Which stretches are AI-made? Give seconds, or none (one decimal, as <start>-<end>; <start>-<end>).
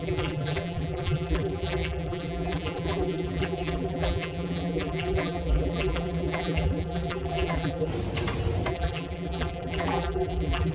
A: 0.0-7.9; 8.7-10.7